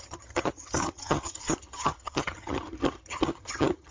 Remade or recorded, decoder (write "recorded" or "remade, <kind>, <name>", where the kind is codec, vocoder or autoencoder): remade, vocoder, HiFi-GAN